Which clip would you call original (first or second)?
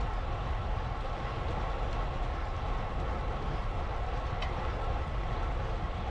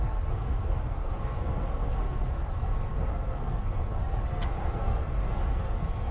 first